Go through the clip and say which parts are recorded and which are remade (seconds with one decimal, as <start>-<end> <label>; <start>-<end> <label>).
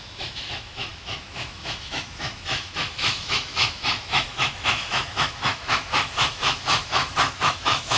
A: 0.0-8.0 remade